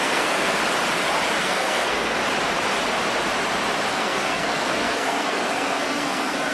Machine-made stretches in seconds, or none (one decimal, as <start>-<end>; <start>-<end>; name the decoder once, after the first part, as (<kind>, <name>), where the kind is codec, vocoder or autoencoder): 0.0-0.6 (codec, SNAC); 1.4-2.2; 3.9-6.5